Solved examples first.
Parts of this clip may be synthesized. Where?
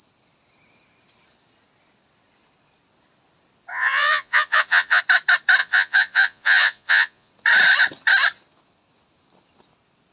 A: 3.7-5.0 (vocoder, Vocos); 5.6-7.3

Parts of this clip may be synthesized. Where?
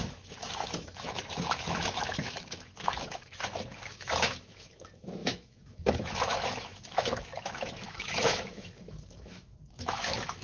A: 0.0-10.4 (autoencoder, DAC-VAE)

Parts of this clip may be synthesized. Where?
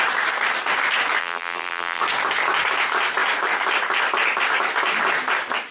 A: 1.2-2.0 (vocoder, BigVGAN v2)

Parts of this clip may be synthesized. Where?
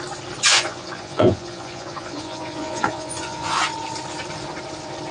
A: 0.5-3.6 (vocoder, Vocos)